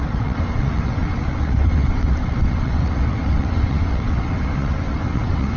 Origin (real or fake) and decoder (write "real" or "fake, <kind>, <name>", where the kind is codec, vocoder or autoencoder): fake, vocoder, WaveNeXt